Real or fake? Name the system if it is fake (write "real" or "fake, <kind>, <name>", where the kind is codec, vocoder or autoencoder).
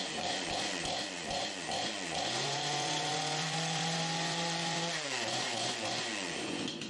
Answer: fake, vocoder, Vocos